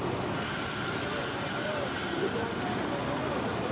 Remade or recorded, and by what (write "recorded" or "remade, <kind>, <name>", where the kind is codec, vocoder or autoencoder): recorded